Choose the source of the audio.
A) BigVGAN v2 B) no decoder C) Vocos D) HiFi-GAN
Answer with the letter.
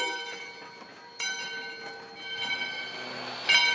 B